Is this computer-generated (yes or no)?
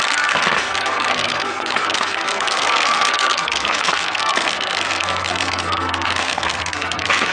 yes